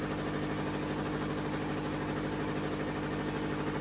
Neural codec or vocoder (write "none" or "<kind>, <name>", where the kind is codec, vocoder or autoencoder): none